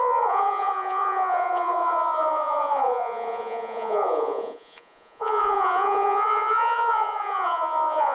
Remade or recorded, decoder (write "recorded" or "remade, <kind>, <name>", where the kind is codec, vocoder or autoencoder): remade, vocoder, Vocos